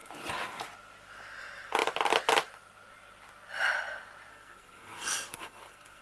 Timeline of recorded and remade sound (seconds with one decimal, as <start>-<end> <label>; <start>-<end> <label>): 0.0-4.3 recorded; 4.3-6.0 remade